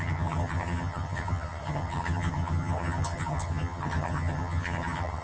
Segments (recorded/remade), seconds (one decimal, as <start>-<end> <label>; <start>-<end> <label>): 0.0-5.2 remade